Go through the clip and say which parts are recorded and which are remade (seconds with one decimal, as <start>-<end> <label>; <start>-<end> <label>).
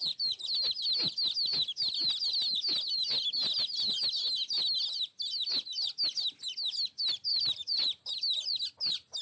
0.0-7.3 recorded; 7.3-8.6 remade; 8.6-9.2 recorded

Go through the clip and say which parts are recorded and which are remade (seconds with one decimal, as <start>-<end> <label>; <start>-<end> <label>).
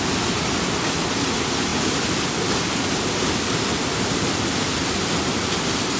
0.0-6.0 recorded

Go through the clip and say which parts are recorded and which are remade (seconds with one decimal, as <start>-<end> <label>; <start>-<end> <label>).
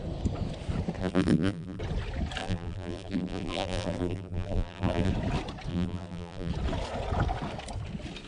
0.0-1.0 recorded; 1.0-1.8 remade; 1.8-2.4 recorded; 2.4-5.1 remade; 5.1-5.7 recorded; 5.7-6.5 remade; 6.5-8.3 recorded